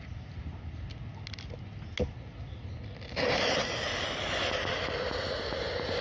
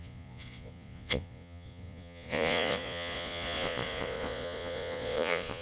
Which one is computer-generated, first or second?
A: second